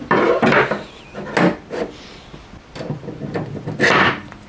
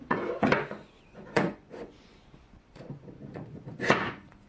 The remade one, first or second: second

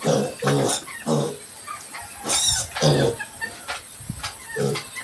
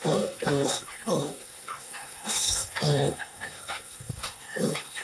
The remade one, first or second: second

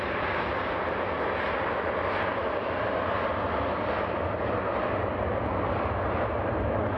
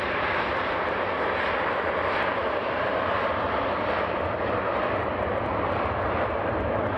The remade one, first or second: second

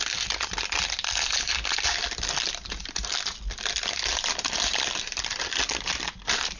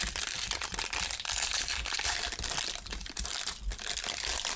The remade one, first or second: second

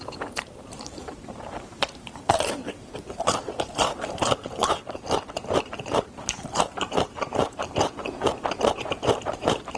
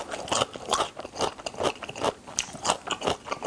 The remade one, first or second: first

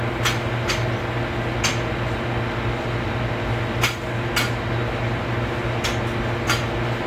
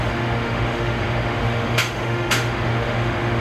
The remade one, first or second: second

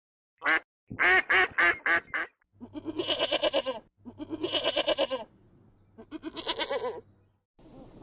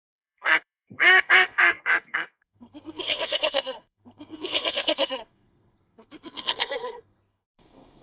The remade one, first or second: second